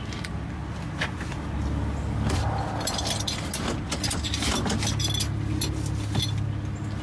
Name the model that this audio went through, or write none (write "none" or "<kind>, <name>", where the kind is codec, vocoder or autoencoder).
none